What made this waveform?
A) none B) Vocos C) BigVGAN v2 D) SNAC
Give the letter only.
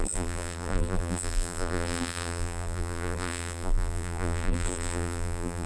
C